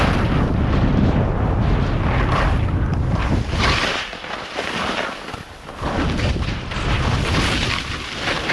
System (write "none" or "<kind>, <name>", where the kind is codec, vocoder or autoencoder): none